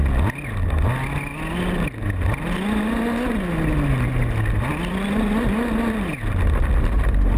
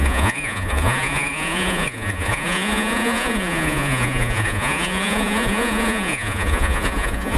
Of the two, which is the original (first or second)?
first